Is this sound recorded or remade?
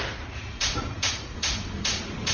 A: remade